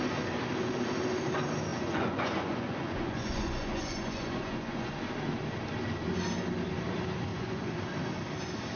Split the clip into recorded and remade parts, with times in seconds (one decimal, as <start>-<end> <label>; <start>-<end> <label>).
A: 0.0-1.7 recorded; 1.7-4.9 remade; 4.9-7.3 recorded; 7.3-7.8 remade; 7.8-8.8 recorded